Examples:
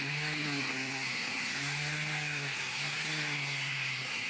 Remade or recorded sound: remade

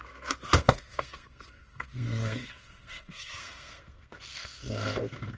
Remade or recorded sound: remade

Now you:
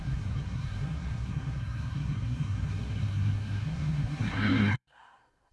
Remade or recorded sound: remade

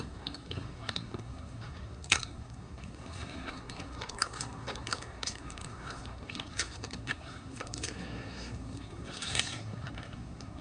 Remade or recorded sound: remade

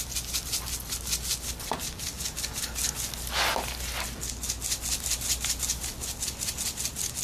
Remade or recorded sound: recorded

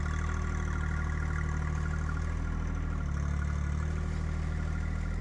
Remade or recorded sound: recorded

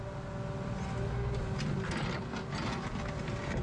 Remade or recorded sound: recorded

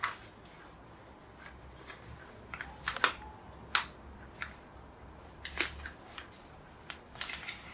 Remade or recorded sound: recorded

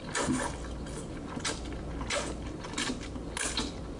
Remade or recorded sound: recorded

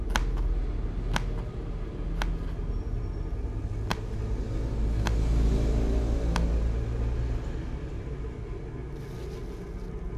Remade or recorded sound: recorded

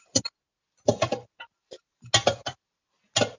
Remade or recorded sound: recorded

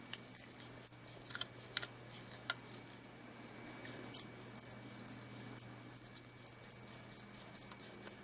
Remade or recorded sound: recorded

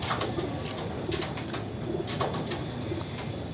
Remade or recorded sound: recorded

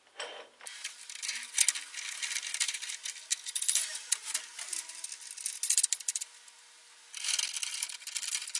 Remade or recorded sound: recorded